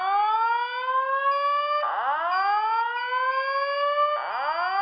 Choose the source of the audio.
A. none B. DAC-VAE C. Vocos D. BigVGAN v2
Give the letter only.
A